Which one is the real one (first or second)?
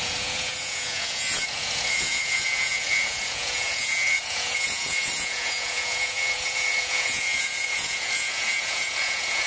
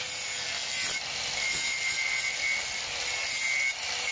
second